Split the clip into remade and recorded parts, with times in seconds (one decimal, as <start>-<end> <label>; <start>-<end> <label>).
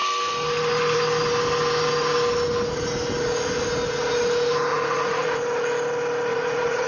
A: 0.0-4.7 recorded; 4.7-5.4 remade; 5.4-6.3 recorded; 6.3-6.9 remade